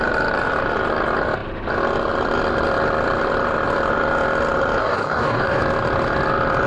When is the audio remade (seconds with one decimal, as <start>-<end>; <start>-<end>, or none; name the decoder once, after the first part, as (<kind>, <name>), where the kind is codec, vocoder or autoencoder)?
4.8-5.6 (codec, DAC)